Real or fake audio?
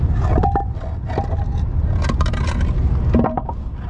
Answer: real